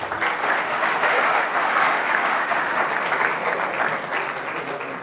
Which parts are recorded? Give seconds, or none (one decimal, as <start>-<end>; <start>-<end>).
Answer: 0.0-0.4; 2.8-5.0